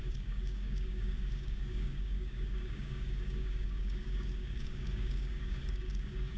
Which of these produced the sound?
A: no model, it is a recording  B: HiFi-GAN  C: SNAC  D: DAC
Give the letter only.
D